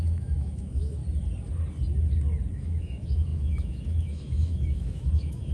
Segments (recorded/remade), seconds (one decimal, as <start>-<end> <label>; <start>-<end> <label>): 0.0-1.0 remade; 1.0-2.5 recorded; 2.5-5.5 remade

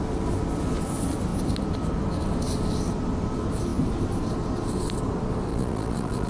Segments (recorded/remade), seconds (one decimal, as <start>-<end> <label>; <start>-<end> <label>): 0.0-5.5 recorded; 5.5-6.3 remade

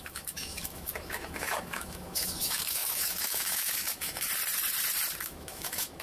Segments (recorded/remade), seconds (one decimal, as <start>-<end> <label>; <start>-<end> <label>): 0.0-4.3 remade; 4.3-5.2 recorded; 5.2-6.0 remade

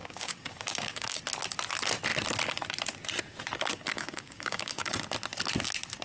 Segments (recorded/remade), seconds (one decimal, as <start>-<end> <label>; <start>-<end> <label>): 0.0-1.2 remade; 1.2-3.7 recorded; 3.7-4.9 remade; 4.9-6.0 recorded

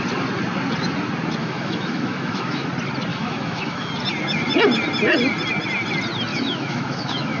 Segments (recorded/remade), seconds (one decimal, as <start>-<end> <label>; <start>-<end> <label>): 0.0-1.4 recorded; 1.4-2.7 remade; 2.7-3.1 recorded; 3.1-3.9 remade; 3.9-6.3 recorded; 6.3-7.4 remade

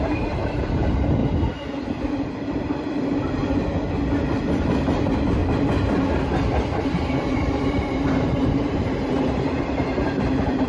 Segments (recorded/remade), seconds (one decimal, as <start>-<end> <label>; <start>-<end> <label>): 0.0-1.2 remade; 1.2-2.0 recorded; 2.0-3.4 remade; 3.4-4.4 recorded; 4.4-5.4 remade; 5.4-6.8 recorded; 6.8-10.7 remade